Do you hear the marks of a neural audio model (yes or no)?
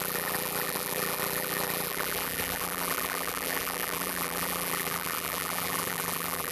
yes